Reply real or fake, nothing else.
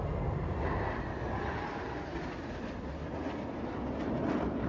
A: real